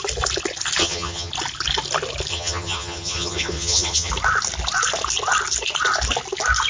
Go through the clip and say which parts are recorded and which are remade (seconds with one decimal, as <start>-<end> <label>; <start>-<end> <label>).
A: 0.0-0.8 recorded; 0.8-1.3 remade; 1.3-2.3 recorded; 2.3-4.1 remade; 4.1-6.7 recorded